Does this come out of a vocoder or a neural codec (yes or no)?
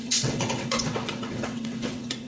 yes